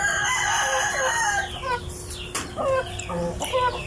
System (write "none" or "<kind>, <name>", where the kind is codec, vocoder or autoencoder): none